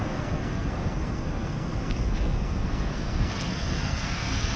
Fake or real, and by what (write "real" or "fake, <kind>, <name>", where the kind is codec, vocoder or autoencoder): fake, codec, SNAC